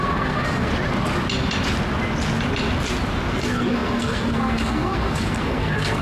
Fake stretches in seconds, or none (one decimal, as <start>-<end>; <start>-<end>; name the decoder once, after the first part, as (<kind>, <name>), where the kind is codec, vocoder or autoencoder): 0.0-0.7 (codec, SNAC); 3.3-6.0